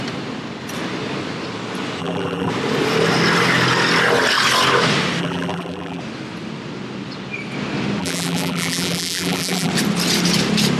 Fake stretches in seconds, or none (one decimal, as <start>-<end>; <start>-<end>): 2.0-2.5; 5.2-6.0; 8.0-9.7